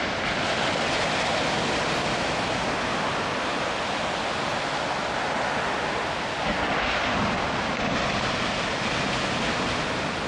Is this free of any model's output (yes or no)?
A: yes